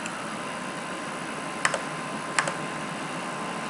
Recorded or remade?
recorded